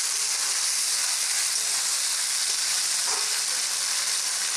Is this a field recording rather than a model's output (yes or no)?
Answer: yes